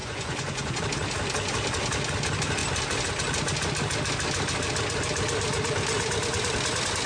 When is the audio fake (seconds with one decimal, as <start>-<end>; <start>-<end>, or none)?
0.0-0.8